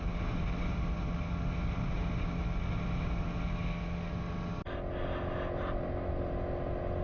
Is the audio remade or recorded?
recorded